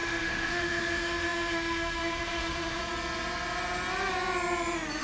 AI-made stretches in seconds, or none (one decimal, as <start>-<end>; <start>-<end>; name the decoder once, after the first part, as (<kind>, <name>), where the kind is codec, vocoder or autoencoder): 0.0-2.8 (autoencoder, DAC-VAE)

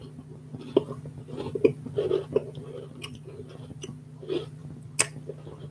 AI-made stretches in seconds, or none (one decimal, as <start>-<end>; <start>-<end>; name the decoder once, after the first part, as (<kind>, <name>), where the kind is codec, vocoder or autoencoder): none

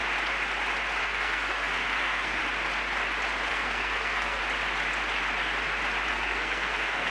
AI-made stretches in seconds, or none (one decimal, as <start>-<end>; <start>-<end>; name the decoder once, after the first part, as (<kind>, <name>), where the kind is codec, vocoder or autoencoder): 1.0-2.4 (codec, SNAC); 3.5-4.4; 6.1-7.1

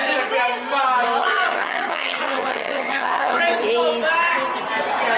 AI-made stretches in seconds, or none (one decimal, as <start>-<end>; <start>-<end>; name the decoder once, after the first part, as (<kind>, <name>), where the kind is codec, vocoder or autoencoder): 1.2-3.4 (vocoder, HiFi-GAN)

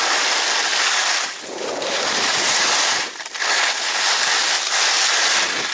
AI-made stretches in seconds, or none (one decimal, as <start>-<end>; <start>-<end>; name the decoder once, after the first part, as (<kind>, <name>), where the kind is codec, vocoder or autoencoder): 0.0-0.7 (vocoder, BigVGAN v2); 4.1-5.7